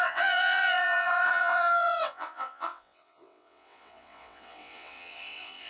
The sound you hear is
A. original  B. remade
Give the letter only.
B